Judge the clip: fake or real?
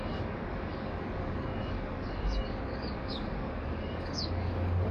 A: fake